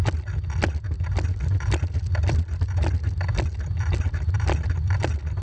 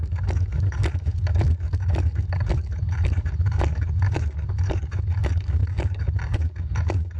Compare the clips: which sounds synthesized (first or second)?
second